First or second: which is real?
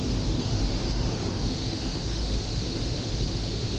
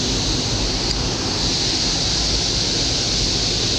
second